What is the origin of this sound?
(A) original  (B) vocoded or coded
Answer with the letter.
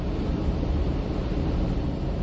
B